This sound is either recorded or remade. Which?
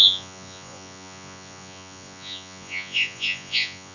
remade